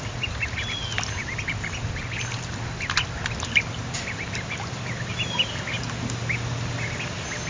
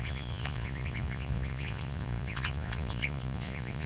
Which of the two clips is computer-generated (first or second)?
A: second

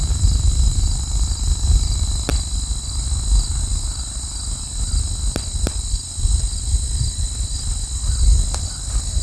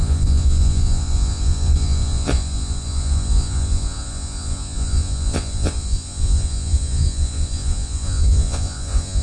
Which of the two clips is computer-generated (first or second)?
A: second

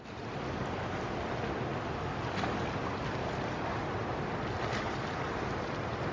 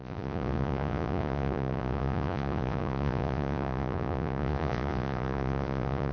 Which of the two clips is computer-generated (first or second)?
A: second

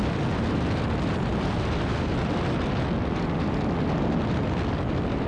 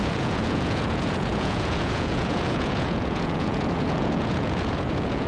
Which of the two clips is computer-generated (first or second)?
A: second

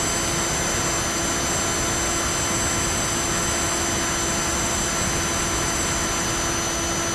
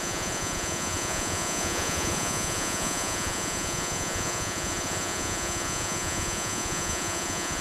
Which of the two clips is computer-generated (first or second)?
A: second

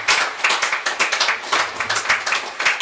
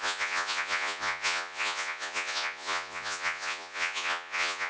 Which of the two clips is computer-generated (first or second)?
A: second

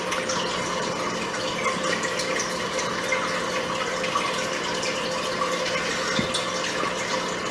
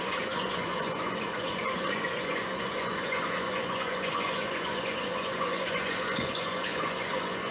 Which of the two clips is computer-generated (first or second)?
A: second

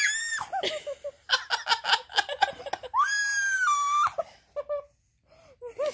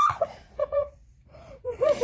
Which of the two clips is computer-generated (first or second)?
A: second